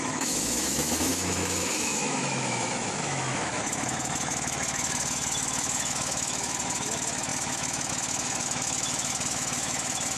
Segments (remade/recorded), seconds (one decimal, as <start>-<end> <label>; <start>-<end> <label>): 0.0-10.2 remade